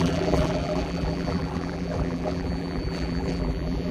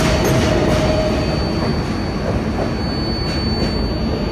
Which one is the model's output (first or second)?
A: first